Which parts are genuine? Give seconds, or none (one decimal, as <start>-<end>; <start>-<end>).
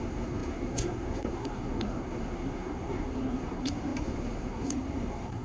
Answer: none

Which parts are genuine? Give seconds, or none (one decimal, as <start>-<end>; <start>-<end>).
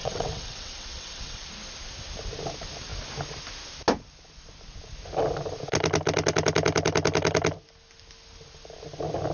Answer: 1.5-9.3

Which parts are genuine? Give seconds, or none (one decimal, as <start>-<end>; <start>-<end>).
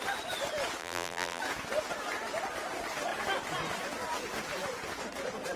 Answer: 0.0-0.8; 1.4-5.6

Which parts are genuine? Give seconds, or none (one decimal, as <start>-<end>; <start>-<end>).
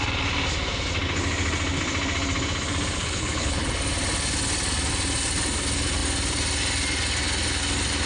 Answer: 0.0-3.0; 3.6-8.1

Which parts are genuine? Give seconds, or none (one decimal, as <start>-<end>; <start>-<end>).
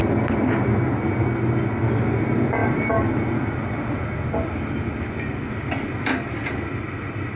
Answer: 0.0-7.4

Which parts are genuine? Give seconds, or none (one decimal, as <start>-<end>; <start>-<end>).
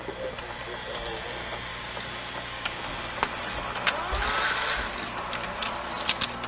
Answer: 0.0-1.7; 2.8-6.5